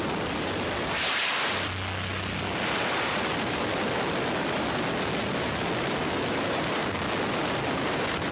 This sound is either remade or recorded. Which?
recorded